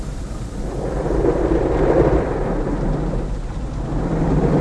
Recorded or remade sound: recorded